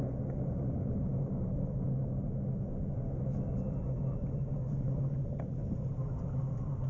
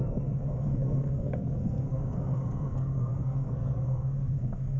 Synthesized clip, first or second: second